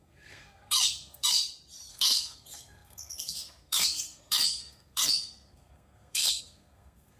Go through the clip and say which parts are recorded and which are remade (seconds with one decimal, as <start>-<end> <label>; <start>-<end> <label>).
0.0-1.4 remade; 1.4-1.9 recorded; 1.9-7.2 remade